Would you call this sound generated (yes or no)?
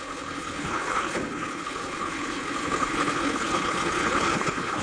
yes